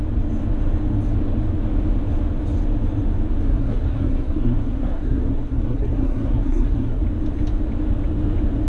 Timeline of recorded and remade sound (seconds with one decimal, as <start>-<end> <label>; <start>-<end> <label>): 0.0-3.5 recorded; 3.5-7.0 remade; 7.0-8.7 recorded